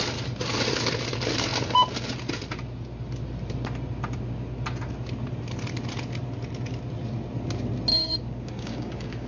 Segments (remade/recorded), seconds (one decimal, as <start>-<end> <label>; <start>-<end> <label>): 0.0-7.9 recorded; 7.9-9.3 remade